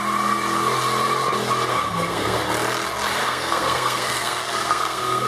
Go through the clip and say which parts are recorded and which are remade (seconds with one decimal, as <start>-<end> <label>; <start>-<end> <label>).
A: 0.0-1.7 recorded; 1.7-2.4 remade; 2.4-3.2 recorded; 3.2-5.3 remade